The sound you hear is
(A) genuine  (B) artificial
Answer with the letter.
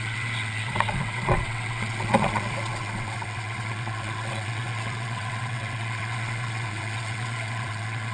B